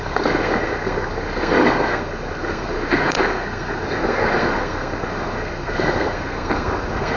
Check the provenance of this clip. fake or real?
fake